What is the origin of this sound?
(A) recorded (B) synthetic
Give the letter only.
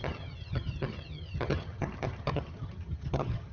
B